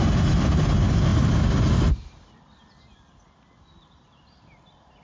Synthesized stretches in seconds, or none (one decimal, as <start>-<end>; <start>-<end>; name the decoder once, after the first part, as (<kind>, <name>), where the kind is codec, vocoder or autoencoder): none